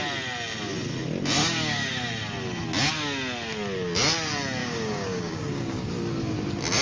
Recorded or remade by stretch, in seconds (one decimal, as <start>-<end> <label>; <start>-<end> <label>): 0.0-1.4 recorded; 1.4-2.1 remade; 2.1-4.6 recorded; 4.6-5.9 remade; 5.9-6.8 recorded